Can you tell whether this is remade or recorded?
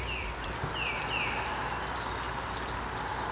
recorded